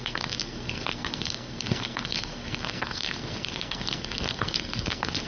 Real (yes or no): no